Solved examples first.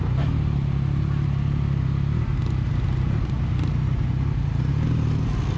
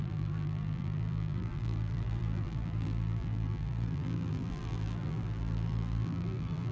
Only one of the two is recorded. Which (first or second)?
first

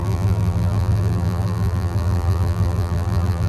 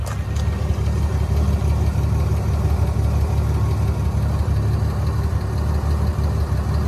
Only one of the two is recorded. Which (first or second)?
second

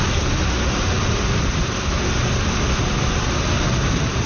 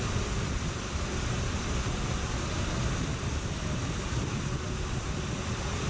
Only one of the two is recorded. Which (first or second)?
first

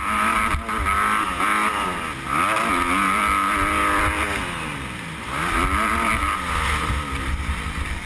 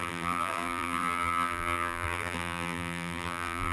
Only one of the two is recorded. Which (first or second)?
first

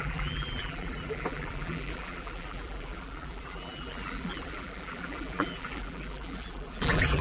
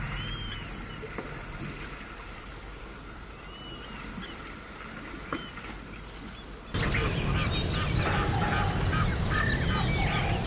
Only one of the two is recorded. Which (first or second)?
second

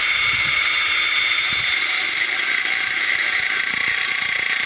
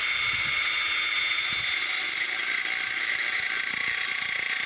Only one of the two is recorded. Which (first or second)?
second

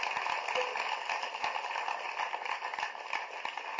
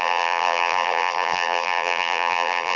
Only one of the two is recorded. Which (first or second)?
first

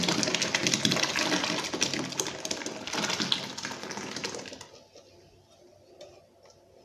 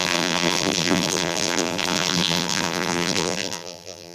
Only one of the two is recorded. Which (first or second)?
first